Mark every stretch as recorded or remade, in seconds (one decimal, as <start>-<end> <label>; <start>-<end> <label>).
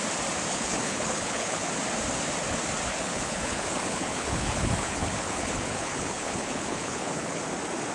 0.0-0.5 recorded; 0.5-1.7 remade; 1.7-2.9 recorded; 2.9-7.4 remade; 7.4-7.9 recorded